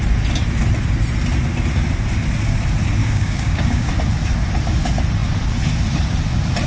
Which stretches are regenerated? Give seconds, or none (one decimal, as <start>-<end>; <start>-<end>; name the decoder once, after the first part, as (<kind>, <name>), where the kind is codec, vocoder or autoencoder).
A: 3.0-3.9 (codec, DAC)